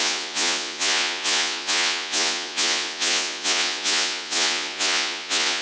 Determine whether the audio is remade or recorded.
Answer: remade